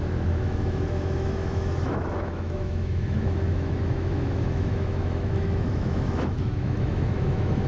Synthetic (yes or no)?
yes